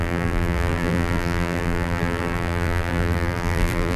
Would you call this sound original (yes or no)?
no